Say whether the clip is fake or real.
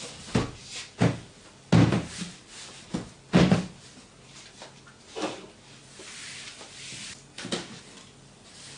real